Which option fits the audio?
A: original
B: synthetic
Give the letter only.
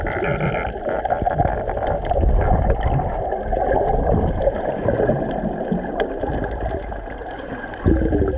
A